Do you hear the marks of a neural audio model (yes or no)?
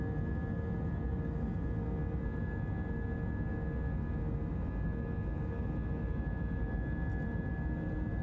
no